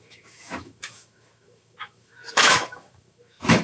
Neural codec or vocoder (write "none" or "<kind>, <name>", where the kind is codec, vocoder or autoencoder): autoencoder, DAC-VAE